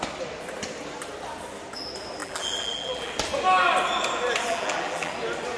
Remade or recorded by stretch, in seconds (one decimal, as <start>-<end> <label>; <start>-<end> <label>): 0.0-2.2 recorded; 2.2-3.1 remade; 3.1-4.5 recorded; 4.5-5.1 remade; 5.1-5.6 recorded